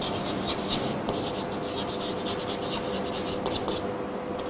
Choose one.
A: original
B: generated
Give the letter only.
A